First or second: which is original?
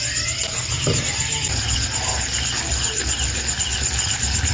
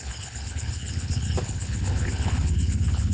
first